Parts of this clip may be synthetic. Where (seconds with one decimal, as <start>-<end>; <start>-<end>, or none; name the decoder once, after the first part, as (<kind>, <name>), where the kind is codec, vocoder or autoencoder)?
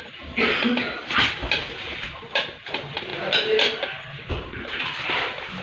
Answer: none